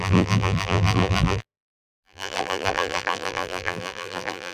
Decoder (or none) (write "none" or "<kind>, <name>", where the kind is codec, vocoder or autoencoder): vocoder, BigVGAN v2